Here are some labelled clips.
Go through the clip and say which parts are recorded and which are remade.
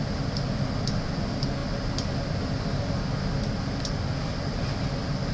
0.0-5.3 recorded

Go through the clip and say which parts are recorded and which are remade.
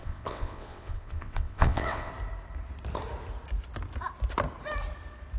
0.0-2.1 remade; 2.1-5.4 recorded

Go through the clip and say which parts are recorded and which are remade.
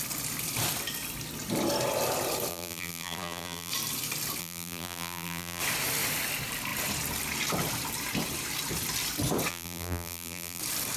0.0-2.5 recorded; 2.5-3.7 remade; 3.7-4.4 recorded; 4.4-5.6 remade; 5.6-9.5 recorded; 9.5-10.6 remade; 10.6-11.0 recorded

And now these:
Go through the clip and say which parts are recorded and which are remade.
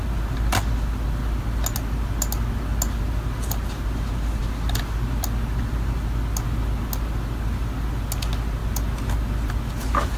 0.0-10.2 recorded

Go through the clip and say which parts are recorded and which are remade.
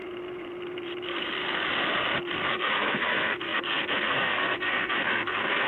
0.0-2.5 recorded; 2.5-5.7 remade